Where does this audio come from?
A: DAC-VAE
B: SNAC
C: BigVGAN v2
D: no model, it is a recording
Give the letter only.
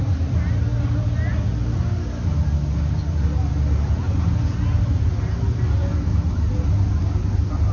D